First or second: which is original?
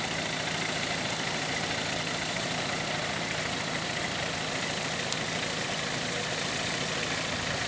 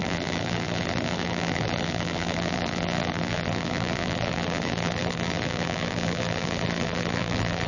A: first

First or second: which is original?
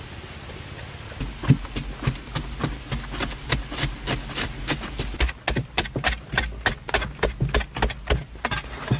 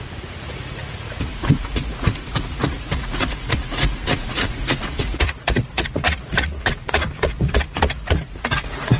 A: first